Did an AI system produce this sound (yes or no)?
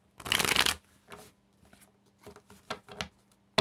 no